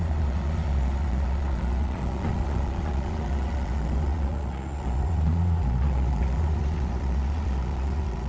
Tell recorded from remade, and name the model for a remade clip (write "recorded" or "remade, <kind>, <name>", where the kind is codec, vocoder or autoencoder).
remade, vocoder, Vocos